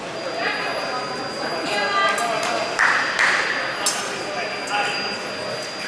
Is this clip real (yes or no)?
yes